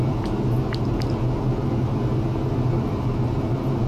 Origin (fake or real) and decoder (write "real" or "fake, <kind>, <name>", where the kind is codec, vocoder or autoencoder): real